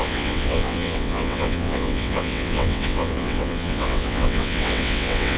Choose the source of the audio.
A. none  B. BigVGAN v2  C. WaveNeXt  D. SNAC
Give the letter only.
C